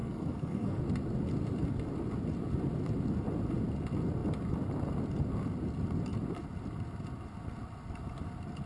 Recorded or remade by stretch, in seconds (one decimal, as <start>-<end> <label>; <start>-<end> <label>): 0.0-0.8 remade; 0.8-8.7 recorded